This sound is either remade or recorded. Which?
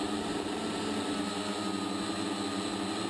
recorded